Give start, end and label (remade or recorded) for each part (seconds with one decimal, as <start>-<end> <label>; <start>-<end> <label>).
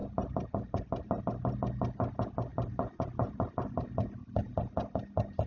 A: 0.0-1.2 remade; 1.2-2.5 recorded; 2.5-3.5 remade; 3.5-5.5 recorded